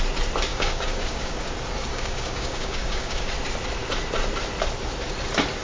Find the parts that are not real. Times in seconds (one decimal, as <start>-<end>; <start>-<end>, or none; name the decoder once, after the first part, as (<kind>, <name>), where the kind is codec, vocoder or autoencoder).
0.5-1.5 (codec, DAC); 1.9-3.3